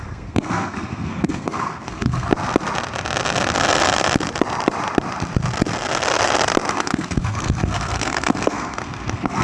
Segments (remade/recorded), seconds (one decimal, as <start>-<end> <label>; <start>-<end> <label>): 0.0-2.3 remade; 2.3-6.7 recorded; 6.7-9.4 remade